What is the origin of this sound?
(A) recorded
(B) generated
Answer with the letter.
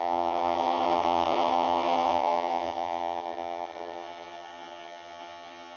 B